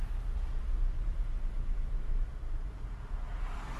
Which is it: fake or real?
fake